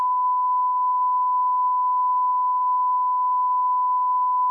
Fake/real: fake